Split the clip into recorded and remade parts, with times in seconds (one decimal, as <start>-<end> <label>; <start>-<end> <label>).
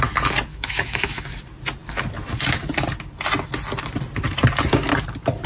0.0-0.5 recorded; 0.5-1.2 remade; 1.2-5.5 recorded